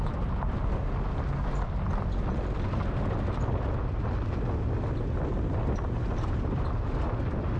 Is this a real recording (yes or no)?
yes